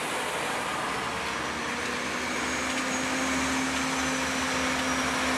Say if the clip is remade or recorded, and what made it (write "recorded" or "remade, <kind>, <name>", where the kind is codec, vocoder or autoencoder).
recorded